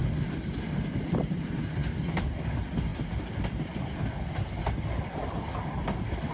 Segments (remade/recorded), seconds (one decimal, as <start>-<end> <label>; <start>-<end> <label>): 0.0-6.3 recorded